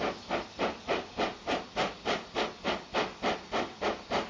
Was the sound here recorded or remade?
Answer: recorded